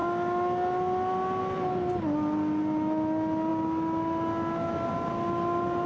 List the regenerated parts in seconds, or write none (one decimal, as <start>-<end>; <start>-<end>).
none